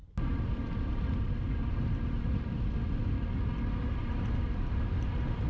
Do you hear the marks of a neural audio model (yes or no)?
no